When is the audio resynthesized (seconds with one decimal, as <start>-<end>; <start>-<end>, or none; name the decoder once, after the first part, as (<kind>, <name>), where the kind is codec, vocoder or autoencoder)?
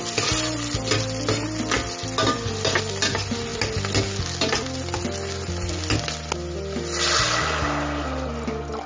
none